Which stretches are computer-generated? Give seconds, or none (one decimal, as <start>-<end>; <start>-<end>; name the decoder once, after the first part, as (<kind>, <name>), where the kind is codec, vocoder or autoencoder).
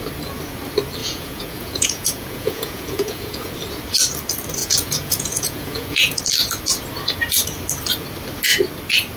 1.0-3.5 (vocoder, Vocos); 4.6-6.2